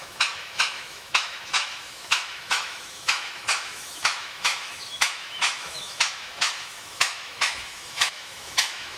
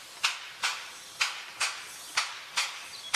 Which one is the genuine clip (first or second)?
second